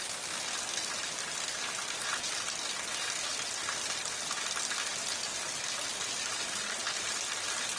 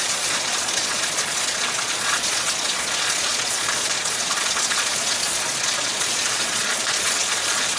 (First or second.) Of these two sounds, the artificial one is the second